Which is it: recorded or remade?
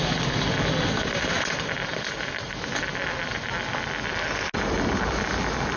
recorded